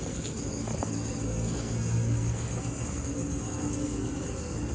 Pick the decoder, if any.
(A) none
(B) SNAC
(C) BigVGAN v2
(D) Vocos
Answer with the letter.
B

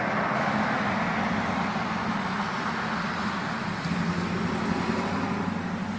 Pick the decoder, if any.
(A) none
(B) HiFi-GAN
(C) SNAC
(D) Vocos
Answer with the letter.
A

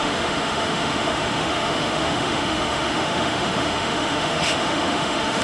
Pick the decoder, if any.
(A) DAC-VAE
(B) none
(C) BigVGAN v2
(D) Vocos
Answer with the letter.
A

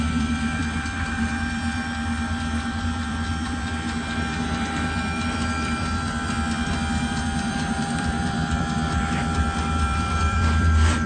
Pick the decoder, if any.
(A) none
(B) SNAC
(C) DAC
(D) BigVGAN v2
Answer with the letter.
D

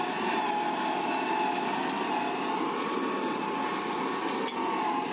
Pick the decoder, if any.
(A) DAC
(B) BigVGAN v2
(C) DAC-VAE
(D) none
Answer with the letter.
D